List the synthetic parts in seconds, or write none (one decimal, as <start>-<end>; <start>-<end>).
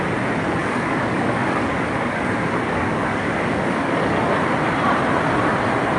0.6-4.1